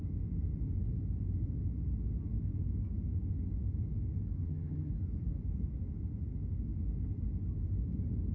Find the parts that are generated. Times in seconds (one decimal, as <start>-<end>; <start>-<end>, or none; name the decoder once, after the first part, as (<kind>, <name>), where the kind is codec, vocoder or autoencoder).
4.4-4.9 (vocoder, HiFi-GAN)